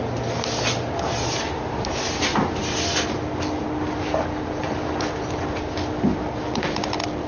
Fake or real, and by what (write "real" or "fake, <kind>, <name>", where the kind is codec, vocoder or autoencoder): real